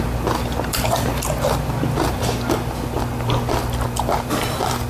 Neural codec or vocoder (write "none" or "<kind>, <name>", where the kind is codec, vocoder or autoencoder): vocoder, BigVGAN v2